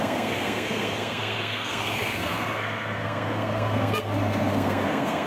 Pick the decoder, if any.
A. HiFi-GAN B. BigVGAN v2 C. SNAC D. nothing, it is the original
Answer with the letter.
C